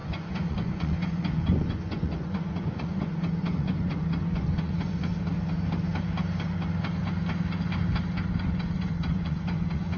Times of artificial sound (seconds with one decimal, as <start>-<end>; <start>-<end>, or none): 0.0-5.1; 8.4-10.0